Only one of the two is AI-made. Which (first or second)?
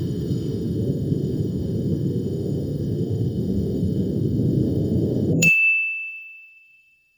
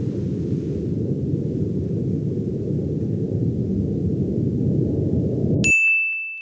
first